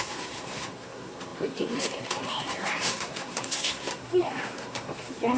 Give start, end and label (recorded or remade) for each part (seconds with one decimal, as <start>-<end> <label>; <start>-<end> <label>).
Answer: 0.0-5.4 remade